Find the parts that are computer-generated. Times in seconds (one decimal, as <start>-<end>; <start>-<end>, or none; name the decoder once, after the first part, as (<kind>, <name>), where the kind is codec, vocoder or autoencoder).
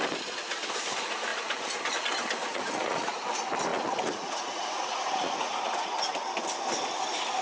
2.5-3.2 (vocoder, Vocos); 3.7-6.2